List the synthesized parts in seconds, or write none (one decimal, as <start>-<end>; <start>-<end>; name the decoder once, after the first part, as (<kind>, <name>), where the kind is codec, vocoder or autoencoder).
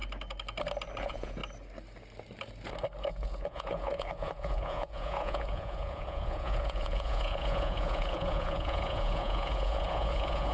1.0-1.4 (vocoder, Vocos); 3.1-10.5